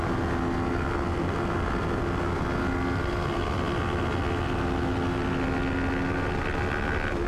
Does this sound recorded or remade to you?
recorded